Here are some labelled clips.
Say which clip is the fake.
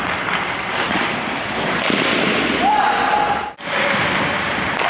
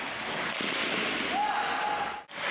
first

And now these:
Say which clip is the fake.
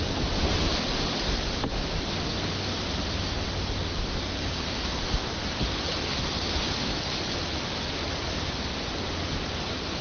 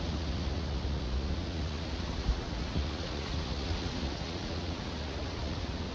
second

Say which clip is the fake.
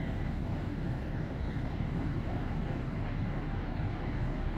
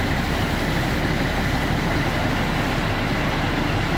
first